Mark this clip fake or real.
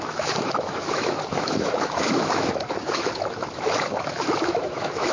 fake